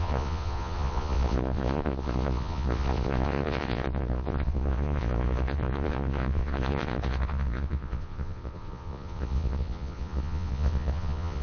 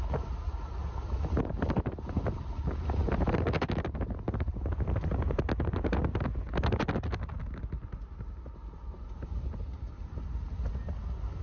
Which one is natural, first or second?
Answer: second